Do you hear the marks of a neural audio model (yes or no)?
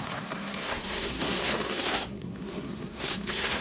yes